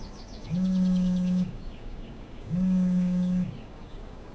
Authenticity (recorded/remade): remade